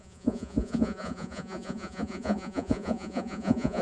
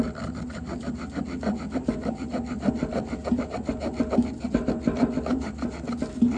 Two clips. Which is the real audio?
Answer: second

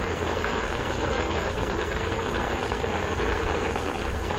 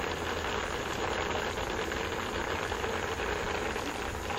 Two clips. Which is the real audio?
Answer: second